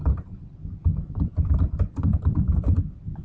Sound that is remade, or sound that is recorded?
remade